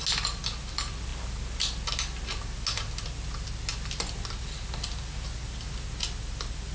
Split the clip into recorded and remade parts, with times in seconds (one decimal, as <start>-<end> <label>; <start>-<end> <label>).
0.0-6.7 recorded